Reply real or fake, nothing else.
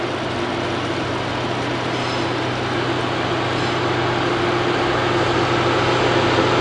real